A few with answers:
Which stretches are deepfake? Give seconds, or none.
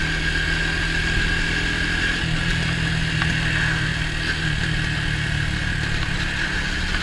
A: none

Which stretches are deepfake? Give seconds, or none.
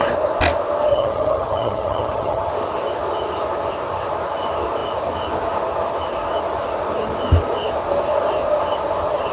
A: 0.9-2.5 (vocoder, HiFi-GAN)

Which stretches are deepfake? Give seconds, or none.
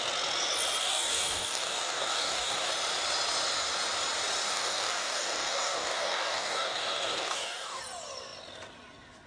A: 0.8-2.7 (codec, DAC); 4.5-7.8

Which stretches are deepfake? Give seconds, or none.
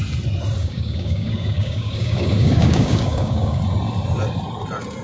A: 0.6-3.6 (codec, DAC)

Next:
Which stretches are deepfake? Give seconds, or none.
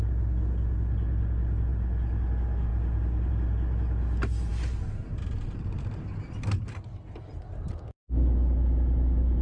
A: none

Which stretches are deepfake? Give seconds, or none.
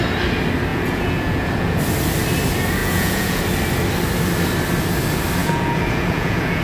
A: 0.7-1.8 (vocoder, Vocos); 2.8-3.4; 5.4-6.6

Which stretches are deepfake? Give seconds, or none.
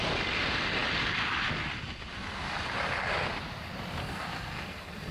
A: 4.0-5.1 (codec, SNAC)